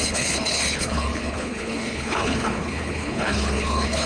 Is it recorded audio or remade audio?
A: remade